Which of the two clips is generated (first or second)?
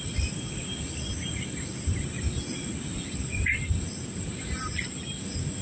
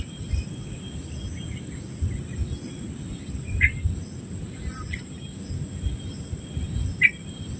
first